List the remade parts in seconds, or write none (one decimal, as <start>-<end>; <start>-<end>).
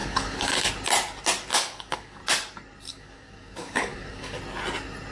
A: 0.0-0.7; 1.5-2.2; 2.9-4.4